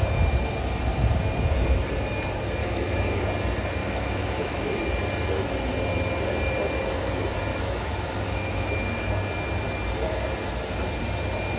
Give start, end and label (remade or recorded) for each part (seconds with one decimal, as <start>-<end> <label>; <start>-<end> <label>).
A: 0.0-2.6 recorded; 2.6-3.2 remade; 3.2-3.8 recorded; 3.8-4.8 remade; 4.8-7.5 recorded; 7.5-9.1 remade; 9.1-11.6 recorded